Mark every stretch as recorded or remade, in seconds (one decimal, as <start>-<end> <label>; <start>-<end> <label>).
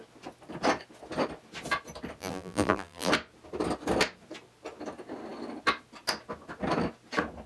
0.0-2.2 recorded; 2.2-3.1 remade; 3.1-7.5 recorded